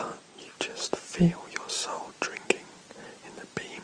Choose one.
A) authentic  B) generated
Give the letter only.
A